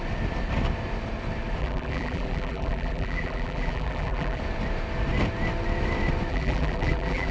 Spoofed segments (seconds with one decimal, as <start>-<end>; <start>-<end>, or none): 1.6-4.4; 6.3-7.3